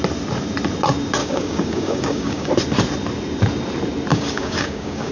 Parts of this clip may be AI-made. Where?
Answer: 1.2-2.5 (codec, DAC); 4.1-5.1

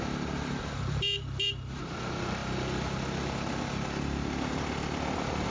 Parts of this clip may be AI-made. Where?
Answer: none

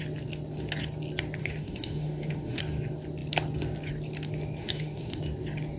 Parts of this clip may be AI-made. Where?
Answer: 1.4-2.6 (autoencoder, DAC-VAE); 4.6-5.2

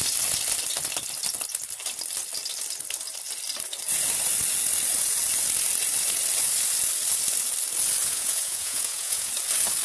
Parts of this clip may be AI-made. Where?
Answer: 8.0-9.3 (vocoder, Vocos)

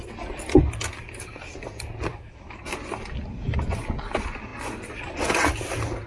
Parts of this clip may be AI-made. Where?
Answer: 2.1-2.6 (autoencoder, DAC-VAE)